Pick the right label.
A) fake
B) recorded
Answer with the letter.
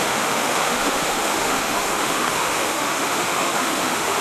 A